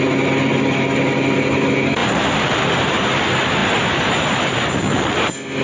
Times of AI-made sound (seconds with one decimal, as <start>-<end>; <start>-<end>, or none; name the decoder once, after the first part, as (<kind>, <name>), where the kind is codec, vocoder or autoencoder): 2.0-3.1 (vocoder, BigVGAN v2)